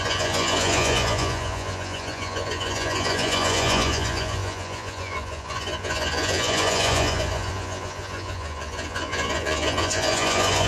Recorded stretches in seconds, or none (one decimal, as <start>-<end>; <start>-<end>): none